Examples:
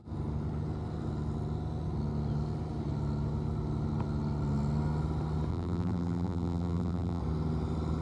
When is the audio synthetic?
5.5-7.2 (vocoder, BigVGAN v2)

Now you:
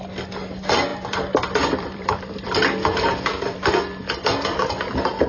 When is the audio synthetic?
0.9-3.8 (vocoder, BigVGAN v2)

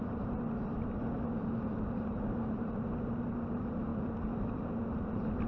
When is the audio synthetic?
0.0-3.9 (vocoder, BigVGAN v2); 4.5-5.5